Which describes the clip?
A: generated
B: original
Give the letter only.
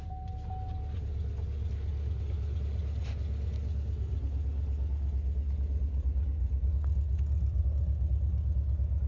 B